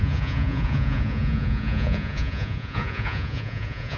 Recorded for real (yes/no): no